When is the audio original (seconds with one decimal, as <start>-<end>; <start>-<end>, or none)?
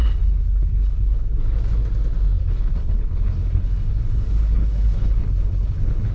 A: 1.4-2.4